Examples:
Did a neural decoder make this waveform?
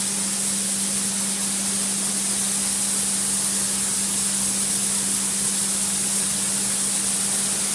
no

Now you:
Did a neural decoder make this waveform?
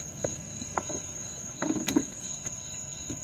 yes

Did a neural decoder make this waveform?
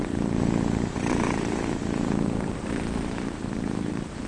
no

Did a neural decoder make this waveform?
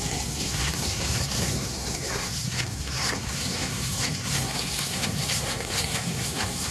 yes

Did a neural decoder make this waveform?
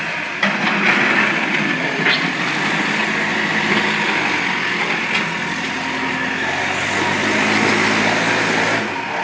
no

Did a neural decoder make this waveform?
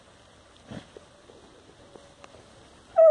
no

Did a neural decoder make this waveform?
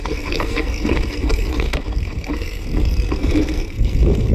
yes